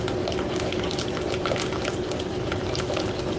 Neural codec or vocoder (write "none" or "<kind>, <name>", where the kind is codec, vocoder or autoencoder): none